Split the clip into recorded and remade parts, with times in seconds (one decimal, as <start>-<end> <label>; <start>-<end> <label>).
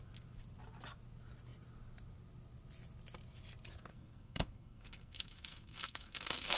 0.0-3.9 recorded; 3.9-6.6 remade